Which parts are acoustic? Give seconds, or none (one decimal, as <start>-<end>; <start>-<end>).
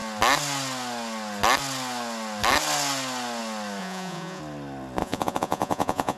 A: 0.0-3.8; 4.4-5.0